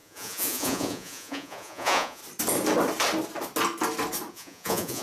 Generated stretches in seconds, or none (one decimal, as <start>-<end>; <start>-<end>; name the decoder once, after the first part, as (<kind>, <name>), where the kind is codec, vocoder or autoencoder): 0.0-2.2 (vocoder, Vocos); 4.3-5.0